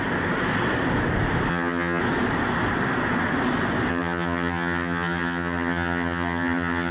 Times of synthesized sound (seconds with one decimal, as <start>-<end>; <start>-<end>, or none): 1.5-2.0; 3.9-6.9